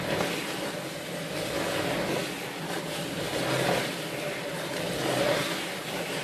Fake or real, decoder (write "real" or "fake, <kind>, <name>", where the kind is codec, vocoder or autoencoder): real